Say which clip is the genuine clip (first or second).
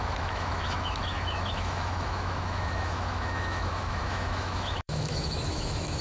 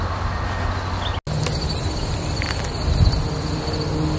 second